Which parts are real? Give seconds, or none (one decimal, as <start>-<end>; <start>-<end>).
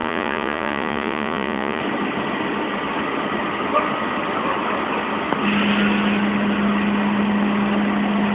1.8-8.3